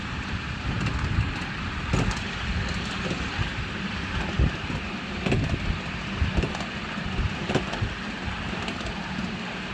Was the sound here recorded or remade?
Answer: recorded